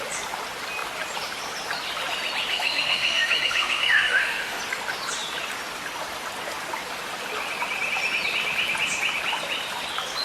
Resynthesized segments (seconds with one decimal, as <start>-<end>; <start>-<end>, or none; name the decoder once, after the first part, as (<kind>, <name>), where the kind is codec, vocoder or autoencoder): 2.5-4.6 (autoencoder, DAC-VAE)